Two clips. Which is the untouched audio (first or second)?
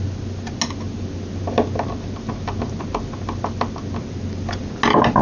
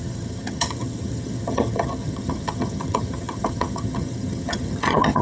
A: first